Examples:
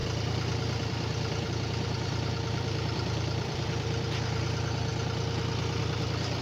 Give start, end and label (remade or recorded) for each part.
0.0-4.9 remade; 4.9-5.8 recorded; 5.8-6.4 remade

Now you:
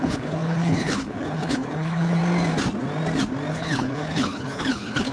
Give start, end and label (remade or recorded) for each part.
0.0-2.2 remade; 2.2-3.5 recorded; 3.5-5.1 remade

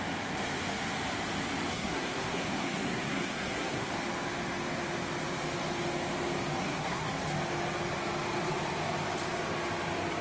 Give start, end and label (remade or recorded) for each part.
0.0-1.7 recorded; 1.7-3.9 remade; 3.9-6.6 recorded; 6.6-7.1 remade; 7.1-10.2 recorded

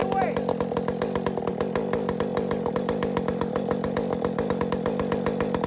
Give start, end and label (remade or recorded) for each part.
0.0-2.3 recorded; 2.3-4.5 remade; 4.5-5.7 recorded

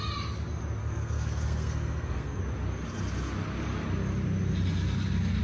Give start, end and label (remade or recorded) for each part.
0.0-0.8 recorded; 0.8-2.4 remade; 2.4-5.4 recorded

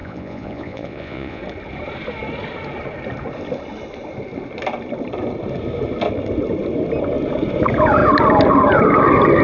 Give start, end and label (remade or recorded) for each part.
0.0-1.4 remade; 1.4-9.4 recorded

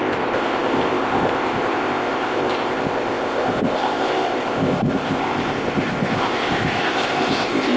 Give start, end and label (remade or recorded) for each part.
0.0-7.8 remade